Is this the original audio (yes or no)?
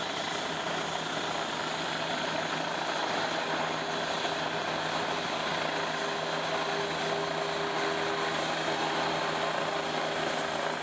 yes